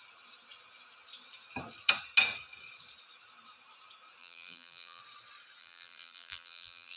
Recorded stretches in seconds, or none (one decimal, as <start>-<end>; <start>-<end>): 0.0-4.2; 5.0-5.6